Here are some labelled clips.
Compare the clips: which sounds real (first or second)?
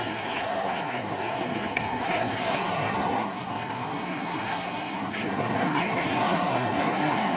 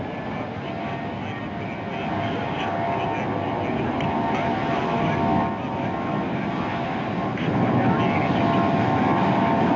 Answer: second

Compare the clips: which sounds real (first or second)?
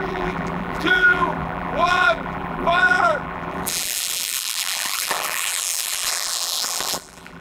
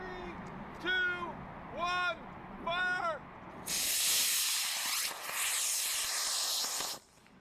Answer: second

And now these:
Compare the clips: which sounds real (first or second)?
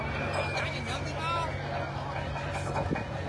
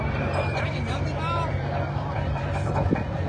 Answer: first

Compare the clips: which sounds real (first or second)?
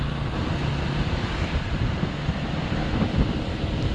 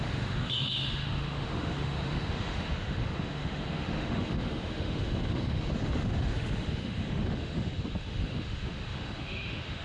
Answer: first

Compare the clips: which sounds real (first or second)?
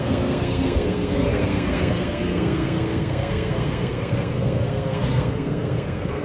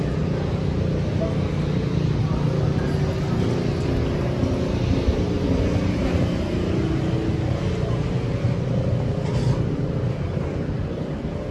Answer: second